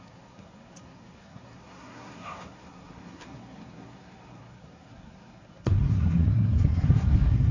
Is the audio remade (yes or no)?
yes